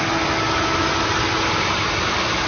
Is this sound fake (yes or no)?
no